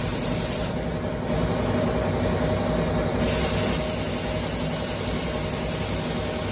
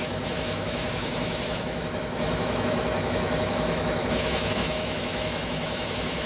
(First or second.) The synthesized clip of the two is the second